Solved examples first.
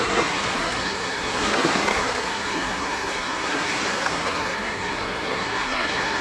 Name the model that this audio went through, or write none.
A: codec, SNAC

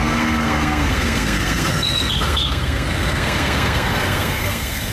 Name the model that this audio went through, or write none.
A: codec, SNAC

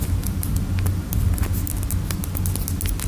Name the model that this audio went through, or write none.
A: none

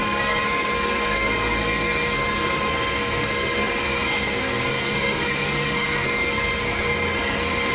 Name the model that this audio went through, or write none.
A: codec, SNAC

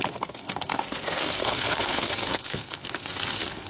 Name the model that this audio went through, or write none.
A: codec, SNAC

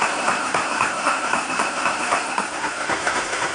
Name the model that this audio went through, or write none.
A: codec, SNAC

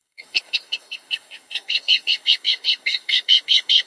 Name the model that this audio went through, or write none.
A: codec, SNAC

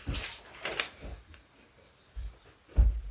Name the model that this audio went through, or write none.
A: none